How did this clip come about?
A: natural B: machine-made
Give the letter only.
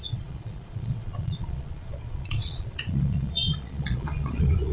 B